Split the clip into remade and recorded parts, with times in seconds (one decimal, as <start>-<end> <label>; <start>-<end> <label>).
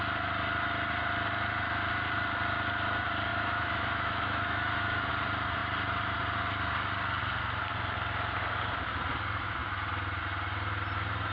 0.0-3.3 recorded; 3.3-5.1 remade; 5.1-11.3 recorded